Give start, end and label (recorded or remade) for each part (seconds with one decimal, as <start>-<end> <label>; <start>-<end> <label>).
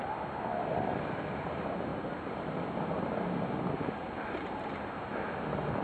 0.0-5.8 recorded